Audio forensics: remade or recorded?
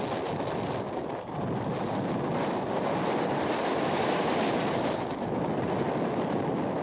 recorded